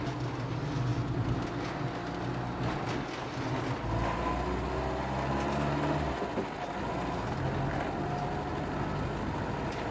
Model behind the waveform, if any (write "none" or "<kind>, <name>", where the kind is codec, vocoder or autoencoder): none